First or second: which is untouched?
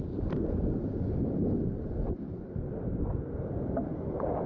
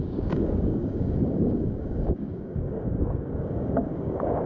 first